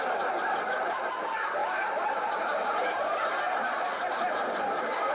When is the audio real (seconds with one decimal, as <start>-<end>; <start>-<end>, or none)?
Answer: 0.0-5.1

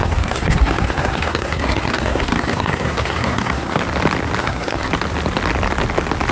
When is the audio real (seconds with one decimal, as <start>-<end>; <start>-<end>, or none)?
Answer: 3.8-4.4; 4.9-6.3

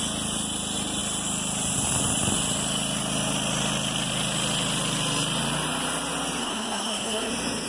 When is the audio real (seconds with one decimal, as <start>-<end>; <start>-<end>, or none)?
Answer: 0.0-6.4; 7.3-7.7

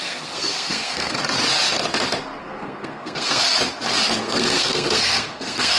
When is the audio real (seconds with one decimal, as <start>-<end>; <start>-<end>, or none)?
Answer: 1.2-2.4; 3.5-4.2